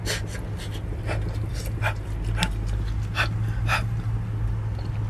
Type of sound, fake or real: real